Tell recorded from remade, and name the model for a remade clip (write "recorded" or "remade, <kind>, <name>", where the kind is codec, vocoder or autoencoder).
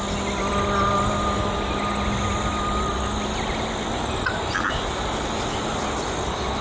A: recorded